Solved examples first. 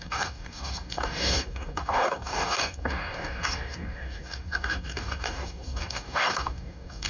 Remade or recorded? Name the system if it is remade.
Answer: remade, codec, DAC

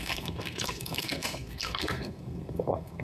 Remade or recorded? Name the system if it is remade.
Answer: remade, codec, SNAC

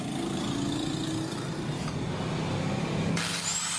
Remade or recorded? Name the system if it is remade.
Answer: recorded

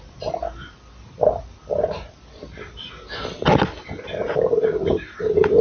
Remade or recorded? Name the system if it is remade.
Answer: recorded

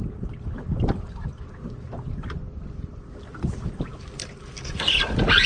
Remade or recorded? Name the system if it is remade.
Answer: recorded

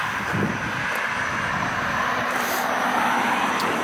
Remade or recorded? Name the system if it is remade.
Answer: recorded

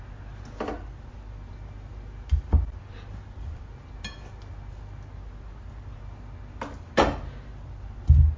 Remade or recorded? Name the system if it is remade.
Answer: recorded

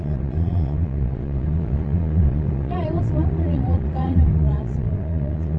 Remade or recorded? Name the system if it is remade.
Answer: remade, vocoder, Vocos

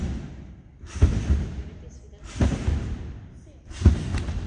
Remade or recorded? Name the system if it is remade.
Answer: recorded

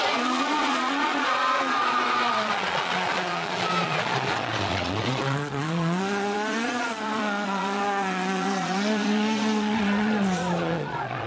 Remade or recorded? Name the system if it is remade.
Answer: remade, vocoder, Vocos